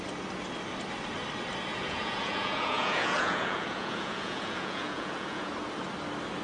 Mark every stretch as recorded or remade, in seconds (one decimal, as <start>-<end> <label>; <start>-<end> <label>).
0.0-1.7 recorded; 1.7-5.5 remade; 5.5-6.4 recorded